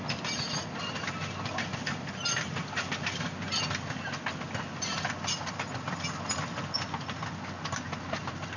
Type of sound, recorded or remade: recorded